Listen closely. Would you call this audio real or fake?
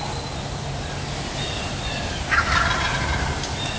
real